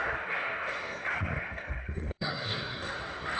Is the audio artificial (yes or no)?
yes